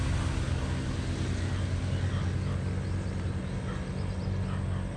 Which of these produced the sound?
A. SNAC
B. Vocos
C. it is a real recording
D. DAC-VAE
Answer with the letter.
C